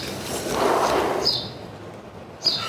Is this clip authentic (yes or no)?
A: yes